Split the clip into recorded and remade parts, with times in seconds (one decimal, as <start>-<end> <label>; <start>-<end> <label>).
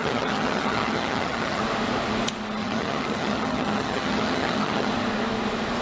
0.0-1.6 remade; 1.6-2.6 recorded; 2.6-4.9 remade; 4.9-5.8 recorded